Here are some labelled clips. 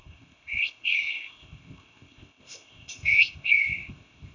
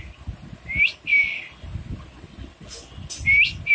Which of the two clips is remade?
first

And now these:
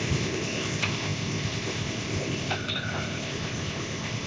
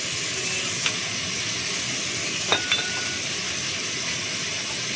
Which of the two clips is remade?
first